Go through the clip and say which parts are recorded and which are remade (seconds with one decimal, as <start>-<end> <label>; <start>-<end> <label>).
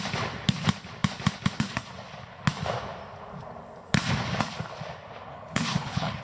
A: 0.0-5.3 recorded; 5.3-6.2 remade